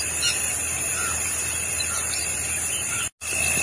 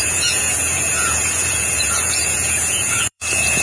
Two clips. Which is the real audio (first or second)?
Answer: first